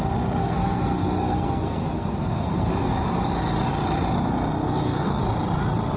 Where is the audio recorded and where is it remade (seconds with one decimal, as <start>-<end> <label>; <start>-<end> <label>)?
0.0-0.4 recorded; 0.4-2.7 remade; 2.7-4.6 recorded; 4.6-5.2 remade; 5.2-6.0 recorded